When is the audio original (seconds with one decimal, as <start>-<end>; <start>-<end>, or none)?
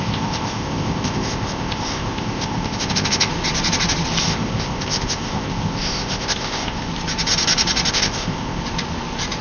3.3-4.2; 6.9-7.9; 8.6-9.4